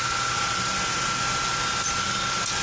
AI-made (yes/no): no